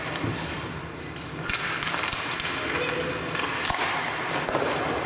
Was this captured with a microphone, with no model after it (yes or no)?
yes